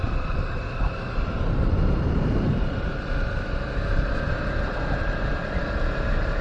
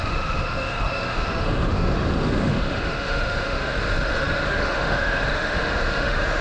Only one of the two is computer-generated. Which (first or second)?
second